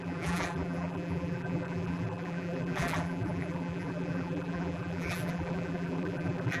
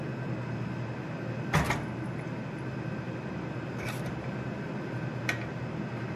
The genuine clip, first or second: second